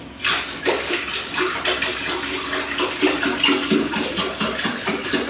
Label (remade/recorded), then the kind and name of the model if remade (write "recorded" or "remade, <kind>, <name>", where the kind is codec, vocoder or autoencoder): recorded